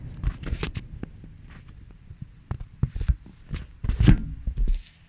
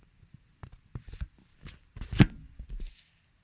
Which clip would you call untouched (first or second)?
first